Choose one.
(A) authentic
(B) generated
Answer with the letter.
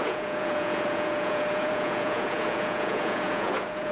B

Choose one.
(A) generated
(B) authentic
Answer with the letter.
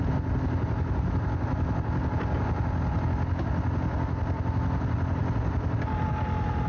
B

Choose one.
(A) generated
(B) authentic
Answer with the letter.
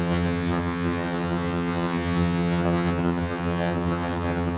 A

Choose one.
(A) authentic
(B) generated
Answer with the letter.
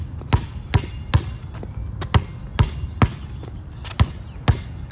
A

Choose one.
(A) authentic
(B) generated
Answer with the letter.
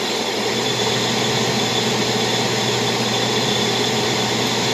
A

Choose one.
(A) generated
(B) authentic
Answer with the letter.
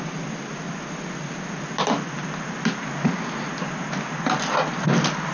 B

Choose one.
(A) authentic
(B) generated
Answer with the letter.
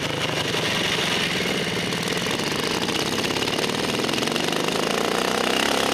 A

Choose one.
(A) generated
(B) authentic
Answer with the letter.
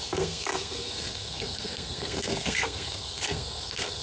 A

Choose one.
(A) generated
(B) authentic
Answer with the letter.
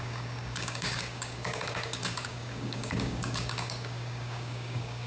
A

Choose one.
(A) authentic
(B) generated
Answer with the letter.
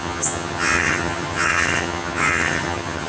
B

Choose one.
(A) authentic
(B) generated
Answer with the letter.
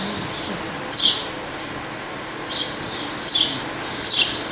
A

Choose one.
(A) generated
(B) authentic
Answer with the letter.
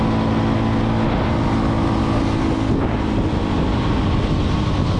B